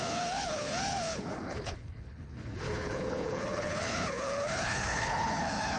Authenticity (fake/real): fake